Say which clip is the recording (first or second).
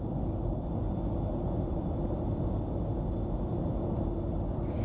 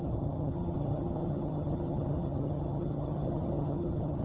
first